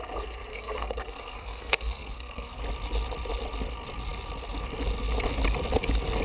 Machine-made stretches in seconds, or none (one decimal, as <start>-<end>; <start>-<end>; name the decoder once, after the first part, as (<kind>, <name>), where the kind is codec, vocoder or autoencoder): 0.5-2.6 (codec, SNAC)